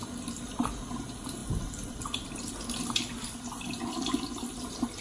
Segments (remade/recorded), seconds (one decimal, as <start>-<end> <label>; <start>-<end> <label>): 0.0-5.0 recorded